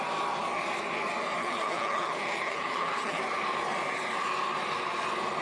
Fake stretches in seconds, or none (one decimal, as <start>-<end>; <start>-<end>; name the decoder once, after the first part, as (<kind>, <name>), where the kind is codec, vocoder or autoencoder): 1.4-3.2 (codec, HILCodec)